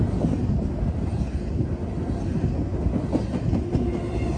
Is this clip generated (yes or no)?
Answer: no